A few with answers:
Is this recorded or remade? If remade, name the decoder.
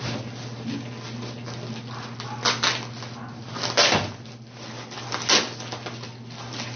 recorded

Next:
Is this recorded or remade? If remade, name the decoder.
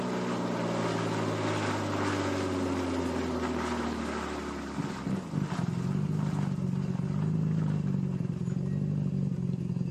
recorded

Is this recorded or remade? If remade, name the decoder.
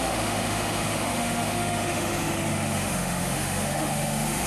remade, autoencoder, DAC-VAE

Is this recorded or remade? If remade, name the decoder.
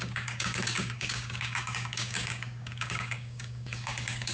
remade, codec, DAC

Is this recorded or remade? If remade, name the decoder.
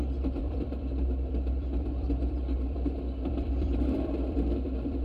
remade, vocoder, BigVGAN v2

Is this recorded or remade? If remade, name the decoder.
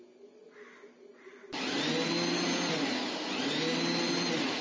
recorded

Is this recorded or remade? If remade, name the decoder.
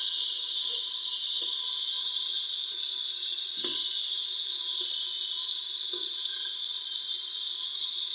recorded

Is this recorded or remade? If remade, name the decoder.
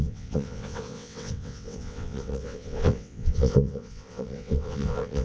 remade, vocoder, WaveNeXt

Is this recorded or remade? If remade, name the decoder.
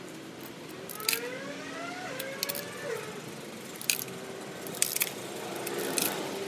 recorded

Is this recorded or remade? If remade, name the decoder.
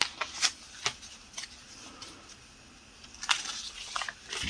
recorded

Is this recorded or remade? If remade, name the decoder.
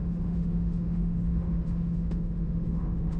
remade, autoencoder, DAC-VAE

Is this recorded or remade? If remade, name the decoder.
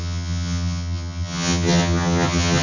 remade, vocoder, HiFi-GAN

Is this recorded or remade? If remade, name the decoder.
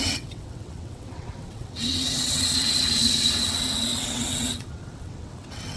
remade, vocoder, WaveNeXt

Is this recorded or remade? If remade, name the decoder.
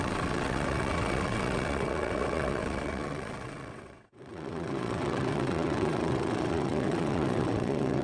remade, vocoder, WaveNeXt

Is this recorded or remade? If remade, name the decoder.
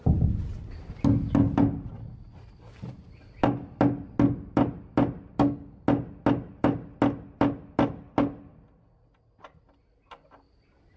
recorded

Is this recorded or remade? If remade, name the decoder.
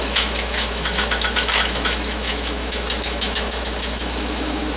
remade, autoencoder, DAC-VAE